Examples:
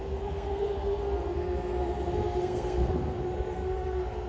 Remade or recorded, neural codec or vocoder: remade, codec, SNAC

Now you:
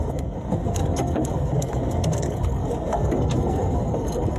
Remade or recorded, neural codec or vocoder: remade, codec, SNAC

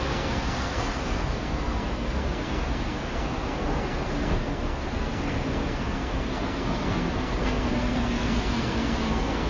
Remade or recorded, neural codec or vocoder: remade, codec, SNAC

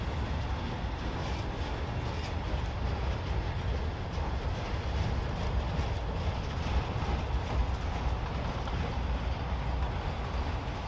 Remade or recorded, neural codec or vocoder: recorded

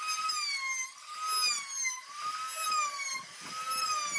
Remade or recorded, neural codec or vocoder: recorded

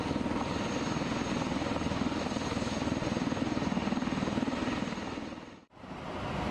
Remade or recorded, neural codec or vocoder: recorded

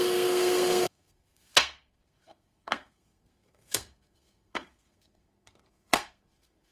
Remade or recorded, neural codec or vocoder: remade, codec, SNAC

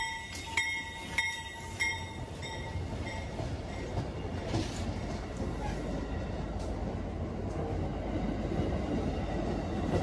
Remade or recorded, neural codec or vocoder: recorded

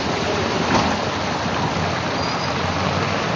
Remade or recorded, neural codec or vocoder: recorded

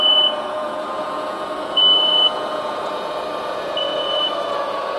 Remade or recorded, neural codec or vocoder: remade, vocoder, Vocos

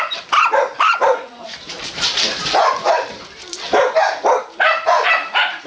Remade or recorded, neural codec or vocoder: remade, vocoder, BigVGAN v2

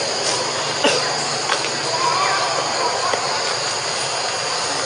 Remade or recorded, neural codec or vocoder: recorded